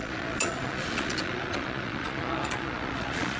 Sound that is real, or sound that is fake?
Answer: fake